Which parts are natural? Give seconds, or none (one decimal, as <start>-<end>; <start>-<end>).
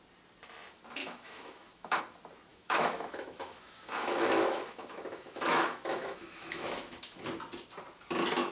0.0-1.0; 2.0-2.5; 7.2-8.5